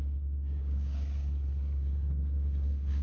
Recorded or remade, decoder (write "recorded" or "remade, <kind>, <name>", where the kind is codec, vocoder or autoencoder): remade, codec, SNAC